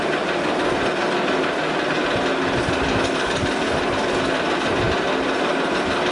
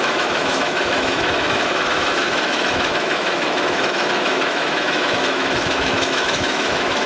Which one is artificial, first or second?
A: second